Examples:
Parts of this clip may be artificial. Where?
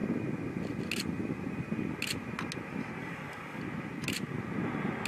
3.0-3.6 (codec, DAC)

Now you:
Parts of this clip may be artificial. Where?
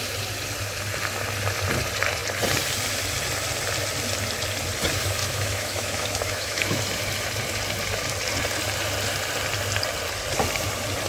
5.2-6.8 (autoencoder, DAC-VAE)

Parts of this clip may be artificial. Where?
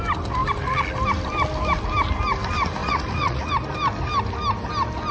2.8-3.5 (vocoder, Vocos)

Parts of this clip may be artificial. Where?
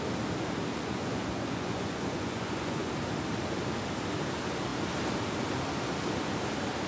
0.7-2.9 (vocoder, Vocos)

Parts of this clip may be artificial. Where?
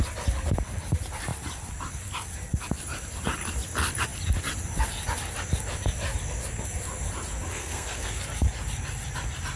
7.5-8.2 (codec, SNAC)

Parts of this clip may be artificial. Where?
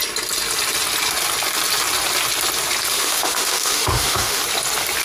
2.9-4.4 (autoencoder, DAC-VAE)